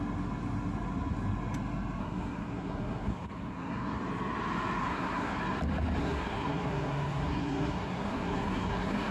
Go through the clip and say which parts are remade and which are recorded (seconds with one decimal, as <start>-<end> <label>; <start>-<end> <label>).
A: 0.0-2.0 recorded; 2.0-4.0 remade; 4.0-4.8 recorded; 4.8-5.4 remade; 5.4-6.0 recorded; 6.0-9.1 remade